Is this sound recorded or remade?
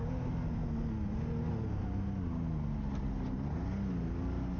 recorded